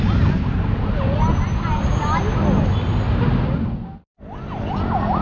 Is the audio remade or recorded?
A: recorded